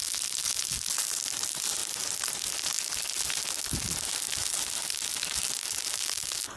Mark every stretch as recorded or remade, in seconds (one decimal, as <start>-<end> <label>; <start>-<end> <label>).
0.0-6.6 recorded